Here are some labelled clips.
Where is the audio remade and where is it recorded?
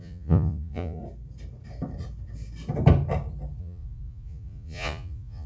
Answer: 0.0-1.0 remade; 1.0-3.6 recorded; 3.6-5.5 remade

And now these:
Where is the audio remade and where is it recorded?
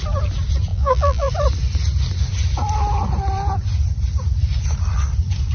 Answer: 0.0-0.7 recorded; 0.7-1.3 remade; 1.3-5.5 recorded